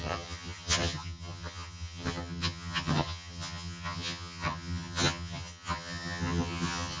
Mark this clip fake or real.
fake